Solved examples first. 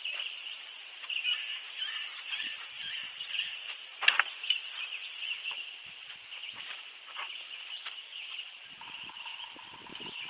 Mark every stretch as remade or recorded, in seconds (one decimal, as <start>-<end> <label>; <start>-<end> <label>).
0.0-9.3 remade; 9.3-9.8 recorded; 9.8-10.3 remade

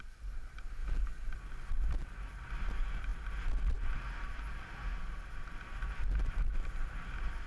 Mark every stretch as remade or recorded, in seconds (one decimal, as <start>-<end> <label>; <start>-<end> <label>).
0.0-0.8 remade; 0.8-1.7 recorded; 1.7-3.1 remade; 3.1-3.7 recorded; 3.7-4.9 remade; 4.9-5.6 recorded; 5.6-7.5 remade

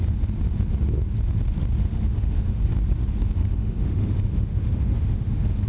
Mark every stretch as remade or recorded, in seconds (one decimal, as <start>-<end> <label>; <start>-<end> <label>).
0.0-1.8 recorded; 1.8-2.6 remade; 2.6-3.0 recorded; 3.0-5.7 remade

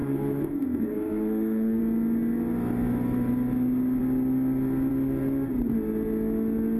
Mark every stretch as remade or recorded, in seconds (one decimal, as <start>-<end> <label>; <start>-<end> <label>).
0.0-1.8 remade; 1.8-6.8 recorded

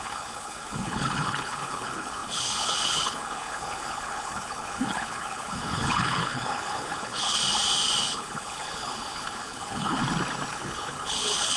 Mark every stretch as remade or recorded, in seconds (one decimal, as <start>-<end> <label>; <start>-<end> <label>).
0.0-7.4 remade; 7.4-8.0 recorded; 8.0-10.0 remade; 10.0-10.5 recorded; 10.5-11.6 remade